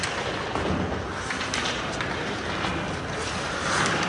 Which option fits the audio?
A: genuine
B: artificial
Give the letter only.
A